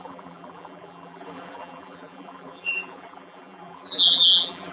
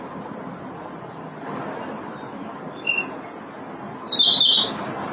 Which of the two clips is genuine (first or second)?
second